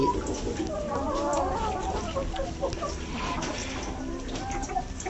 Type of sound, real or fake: real